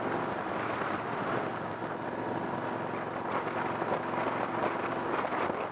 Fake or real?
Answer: real